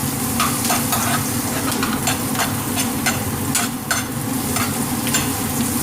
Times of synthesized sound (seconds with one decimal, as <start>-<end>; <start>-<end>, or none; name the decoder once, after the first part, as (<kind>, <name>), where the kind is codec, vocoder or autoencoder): none